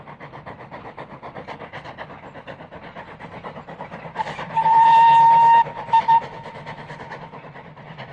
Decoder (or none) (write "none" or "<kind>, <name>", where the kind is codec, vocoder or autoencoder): none